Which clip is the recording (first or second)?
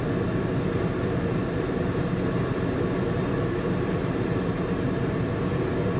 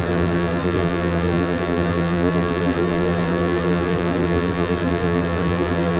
first